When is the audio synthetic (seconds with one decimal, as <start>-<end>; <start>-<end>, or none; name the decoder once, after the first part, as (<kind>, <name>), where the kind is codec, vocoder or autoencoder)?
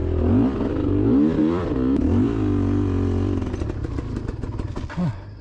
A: 1.4-4.2 (vocoder, BigVGAN v2)